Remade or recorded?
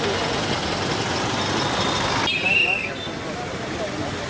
recorded